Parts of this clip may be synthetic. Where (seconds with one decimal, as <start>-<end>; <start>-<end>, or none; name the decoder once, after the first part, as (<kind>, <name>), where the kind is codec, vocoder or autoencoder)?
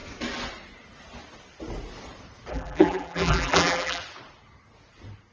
2.5-4.0 (vocoder, BigVGAN v2)